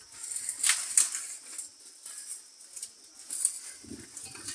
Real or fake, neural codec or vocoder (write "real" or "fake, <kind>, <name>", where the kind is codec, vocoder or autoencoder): real